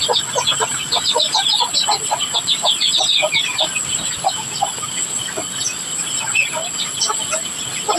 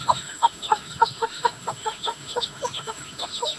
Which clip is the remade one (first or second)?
second